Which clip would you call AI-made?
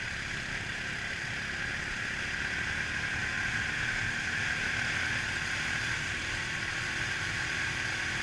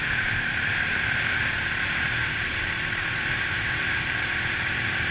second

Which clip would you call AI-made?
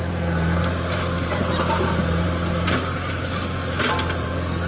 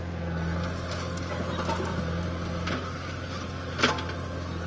first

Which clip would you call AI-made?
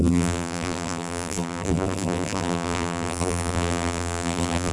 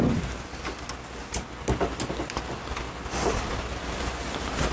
first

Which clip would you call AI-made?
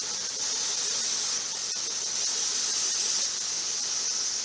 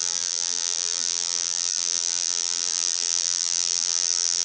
second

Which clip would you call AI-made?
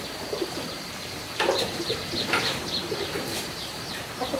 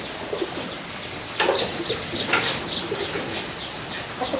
first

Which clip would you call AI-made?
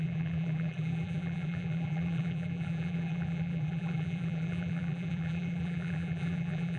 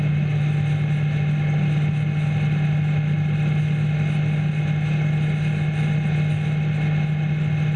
first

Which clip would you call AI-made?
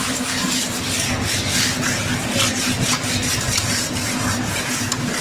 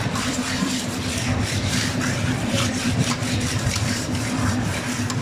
second